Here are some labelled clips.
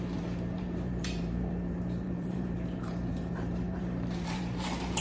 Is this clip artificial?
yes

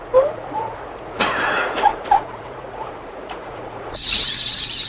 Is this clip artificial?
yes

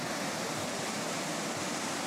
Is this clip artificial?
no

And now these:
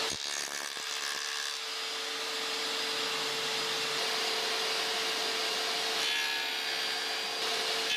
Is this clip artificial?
no